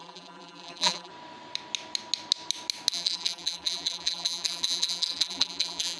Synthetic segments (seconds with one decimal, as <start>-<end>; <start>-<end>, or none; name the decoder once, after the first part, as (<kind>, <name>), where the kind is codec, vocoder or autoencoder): 0.0-1.1 (vocoder, BigVGAN v2); 2.9-6.0